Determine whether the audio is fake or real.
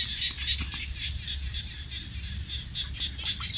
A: real